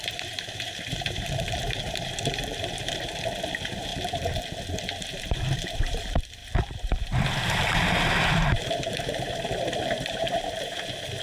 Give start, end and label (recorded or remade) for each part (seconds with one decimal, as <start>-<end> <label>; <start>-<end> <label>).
0.0-3.9 remade; 3.9-5.2 recorded; 5.2-11.2 remade